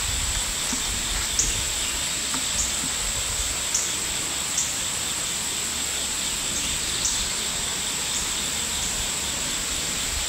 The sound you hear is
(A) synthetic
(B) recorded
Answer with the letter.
B